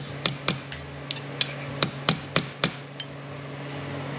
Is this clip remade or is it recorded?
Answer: recorded